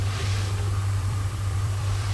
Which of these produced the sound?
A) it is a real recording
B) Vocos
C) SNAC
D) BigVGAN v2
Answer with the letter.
D